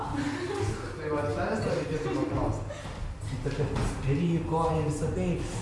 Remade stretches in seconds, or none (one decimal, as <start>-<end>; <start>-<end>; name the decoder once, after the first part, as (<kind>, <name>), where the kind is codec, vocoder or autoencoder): none